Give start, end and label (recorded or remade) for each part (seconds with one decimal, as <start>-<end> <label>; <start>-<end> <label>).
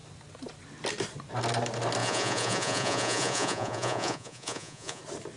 0.0-2.0 recorded; 2.0-5.0 remade; 5.0-5.4 recorded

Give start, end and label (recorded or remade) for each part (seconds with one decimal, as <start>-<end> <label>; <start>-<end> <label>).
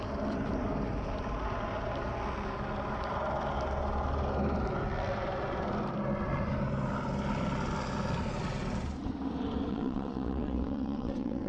0.0-9.7 recorded; 9.7-11.5 remade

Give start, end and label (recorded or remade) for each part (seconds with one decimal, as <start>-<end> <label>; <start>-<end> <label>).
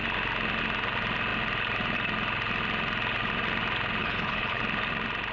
0.0-4.0 recorded; 4.0-4.6 remade; 4.6-5.3 recorded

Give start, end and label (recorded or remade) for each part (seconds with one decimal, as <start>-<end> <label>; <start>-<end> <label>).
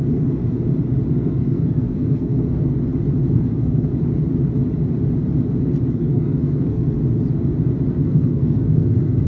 0.0-0.4 remade; 0.4-1.1 recorded; 1.1-2.7 remade; 2.7-3.2 recorded; 3.2-3.9 remade; 3.9-5.9 recorded; 5.9-7.0 remade; 7.0-7.9 recorded; 7.9-9.3 remade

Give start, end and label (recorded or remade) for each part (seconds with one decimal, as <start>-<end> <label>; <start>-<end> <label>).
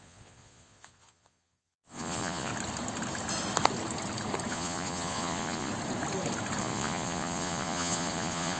0.0-2.5 remade; 2.5-4.5 recorded; 4.5-5.7 remade; 5.7-6.6 recorded; 6.6-8.6 remade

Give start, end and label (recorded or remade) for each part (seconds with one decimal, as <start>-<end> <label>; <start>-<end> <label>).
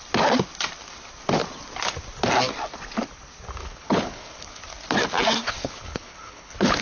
0.0-3.6 recorded; 3.6-4.6 remade; 4.6-5.4 recorded; 5.4-6.8 remade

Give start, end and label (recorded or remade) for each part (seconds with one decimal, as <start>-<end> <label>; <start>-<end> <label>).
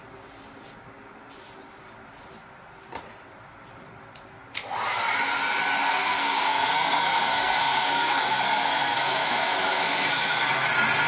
0.0-5.9 recorded; 5.9-10.7 remade; 10.7-11.1 recorded